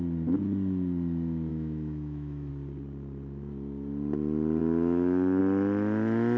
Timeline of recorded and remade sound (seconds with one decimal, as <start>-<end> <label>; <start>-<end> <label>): 0.0-1.5 recorded; 1.5-2.5 remade; 2.5-4.6 recorded; 4.6-5.4 remade; 5.4-6.4 recorded